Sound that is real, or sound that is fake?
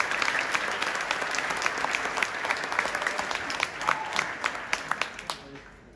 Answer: real